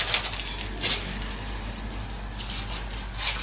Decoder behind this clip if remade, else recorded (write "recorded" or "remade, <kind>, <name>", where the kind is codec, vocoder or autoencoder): recorded